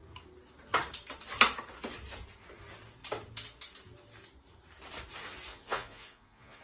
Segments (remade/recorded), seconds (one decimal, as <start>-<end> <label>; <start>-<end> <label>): 0.0-5.5 recorded; 5.5-6.6 remade